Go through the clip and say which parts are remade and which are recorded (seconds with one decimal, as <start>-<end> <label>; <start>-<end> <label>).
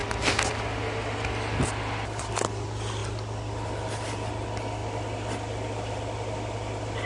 0.0-7.1 recorded